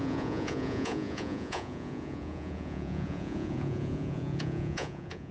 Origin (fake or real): fake